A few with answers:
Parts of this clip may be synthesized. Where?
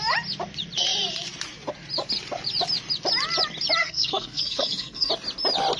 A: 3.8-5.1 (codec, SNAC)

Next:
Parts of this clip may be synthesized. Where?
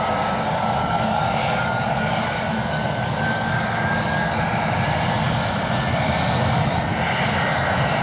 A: 0.8-4.4 (codec, DAC)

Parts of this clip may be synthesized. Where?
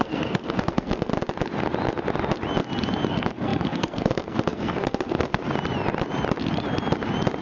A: 0.0-1.1 (codec, SNAC); 3.1-5.4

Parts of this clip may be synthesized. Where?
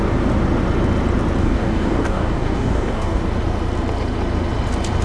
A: 1.4-3.2 (codec, DAC)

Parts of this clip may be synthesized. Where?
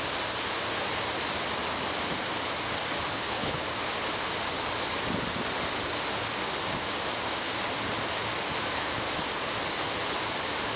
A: 3.1-3.6 (codec, HILCodec)